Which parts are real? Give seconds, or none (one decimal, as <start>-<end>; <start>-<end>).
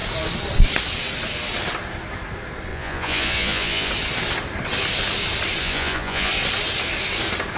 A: 0.0-2.7; 3.9-5.6; 6.3-7.6